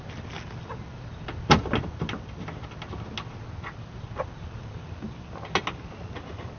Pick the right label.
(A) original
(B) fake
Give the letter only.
A